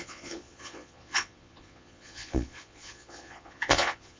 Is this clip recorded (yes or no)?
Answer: no